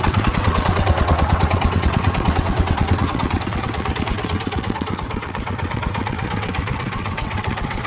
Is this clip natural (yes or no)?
no